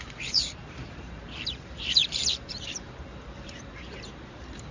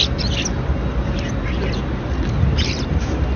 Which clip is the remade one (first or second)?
first